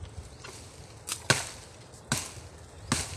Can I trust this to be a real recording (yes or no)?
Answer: yes